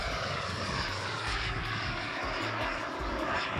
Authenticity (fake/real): fake